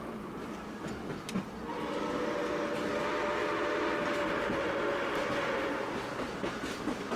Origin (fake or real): real